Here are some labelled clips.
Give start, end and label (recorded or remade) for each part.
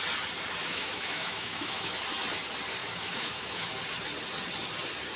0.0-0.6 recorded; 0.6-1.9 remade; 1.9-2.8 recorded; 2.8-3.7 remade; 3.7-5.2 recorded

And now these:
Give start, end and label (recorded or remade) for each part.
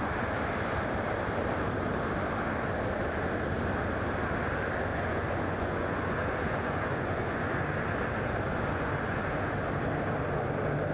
0.0-4.9 recorded; 4.9-7.7 remade; 7.7-8.5 recorded; 8.5-9.2 remade; 9.2-10.9 recorded